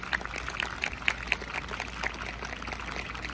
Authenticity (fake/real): real